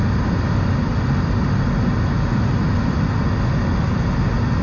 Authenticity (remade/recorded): recorded